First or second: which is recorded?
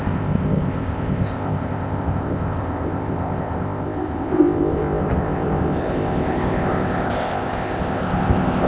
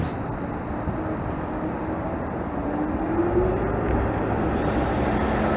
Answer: second